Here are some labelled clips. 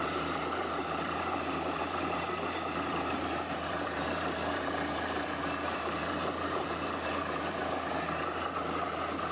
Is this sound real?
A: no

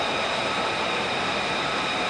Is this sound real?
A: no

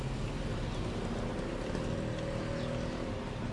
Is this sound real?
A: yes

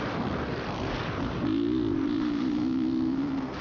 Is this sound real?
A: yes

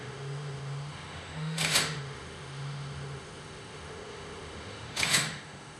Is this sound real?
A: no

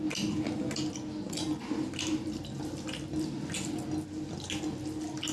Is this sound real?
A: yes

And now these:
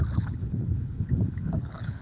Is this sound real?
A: no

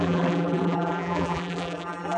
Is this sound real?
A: no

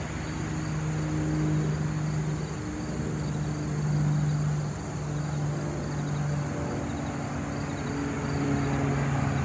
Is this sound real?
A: yes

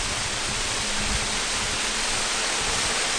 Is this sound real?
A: yes